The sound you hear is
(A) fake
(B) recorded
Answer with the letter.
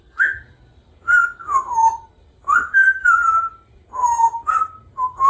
A